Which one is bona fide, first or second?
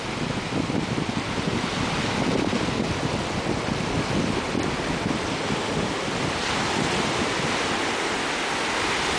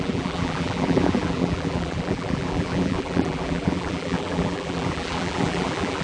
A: first